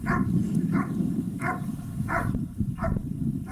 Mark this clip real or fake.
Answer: fake